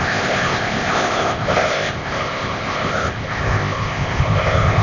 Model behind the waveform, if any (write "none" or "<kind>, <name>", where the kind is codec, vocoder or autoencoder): codec, ZipCodec